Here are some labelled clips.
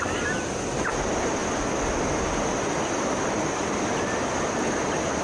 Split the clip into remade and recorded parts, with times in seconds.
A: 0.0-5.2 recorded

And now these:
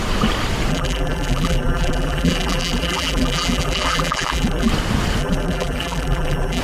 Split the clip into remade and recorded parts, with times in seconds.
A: 0.0-0.7 recorded; 0.7-4.7 remade; 4.7-5.2 recorded; 5.2-6.6 remade

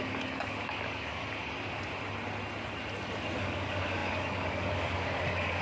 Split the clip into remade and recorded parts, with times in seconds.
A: 0.0-1.2 remade; 1.2-3.4 recorded; 3.4-5.6 remade

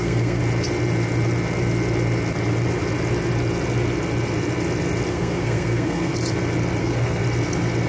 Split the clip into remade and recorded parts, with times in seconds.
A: 0.0-0.4 remade; 0.4-5.1 recorded; 5.1-6.1 remade; 6.1-6.8 recorded; 6.8-7.2 remade; 7.2-7.9 recorded

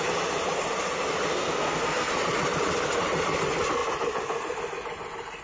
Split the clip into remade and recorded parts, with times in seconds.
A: 0.0-1.3 recorded; 1.3-2.1 remade; 2.1-5.4 recorded